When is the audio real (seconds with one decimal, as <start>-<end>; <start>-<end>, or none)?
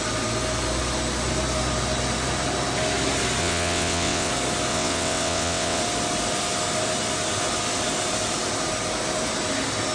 0.0-3.4; 4.3-4.7; 5.8-9.9